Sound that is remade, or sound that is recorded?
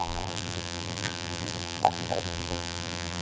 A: remade